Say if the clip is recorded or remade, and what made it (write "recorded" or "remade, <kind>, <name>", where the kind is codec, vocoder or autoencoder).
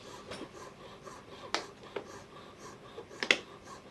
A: recorded